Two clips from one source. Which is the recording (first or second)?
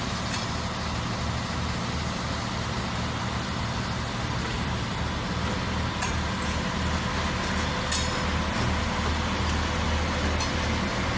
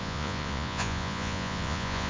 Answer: first